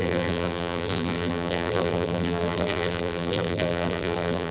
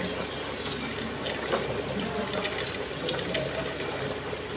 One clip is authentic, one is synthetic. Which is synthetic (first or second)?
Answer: first